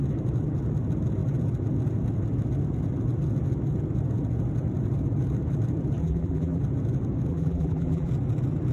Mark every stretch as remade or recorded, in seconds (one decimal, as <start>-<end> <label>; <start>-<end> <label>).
0.0-6.0 recorded; 6.0-6.6 remade; 6.6-7.3 recorded; 7.3-8.1 remade; 8.1-8.7 recorded